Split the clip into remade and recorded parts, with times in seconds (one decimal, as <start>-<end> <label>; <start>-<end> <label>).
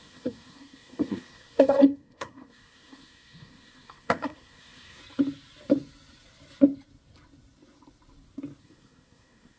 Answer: 0.0-5.0 remade; 5.0-8.6 recorded; 8.6-9.6 remade